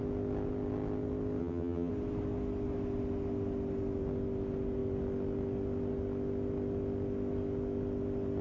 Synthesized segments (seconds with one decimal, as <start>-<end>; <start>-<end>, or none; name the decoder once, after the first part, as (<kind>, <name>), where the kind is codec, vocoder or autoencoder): 1.4-1.9 (vocoder, HiFi-GAN)